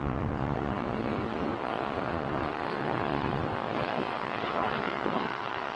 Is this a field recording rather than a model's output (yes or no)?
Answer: no